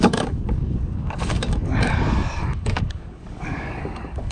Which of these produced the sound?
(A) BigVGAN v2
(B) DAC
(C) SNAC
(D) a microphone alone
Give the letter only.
B